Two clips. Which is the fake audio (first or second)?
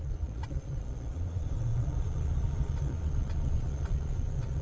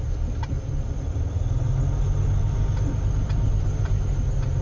first